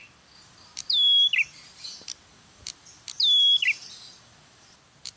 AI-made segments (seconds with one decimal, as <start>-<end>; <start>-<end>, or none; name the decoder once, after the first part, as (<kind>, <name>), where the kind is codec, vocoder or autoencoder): none